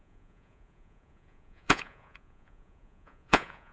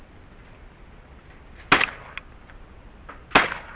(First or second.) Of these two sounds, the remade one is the first